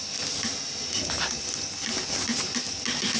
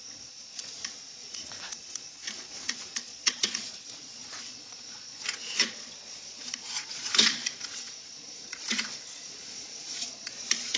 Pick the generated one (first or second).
second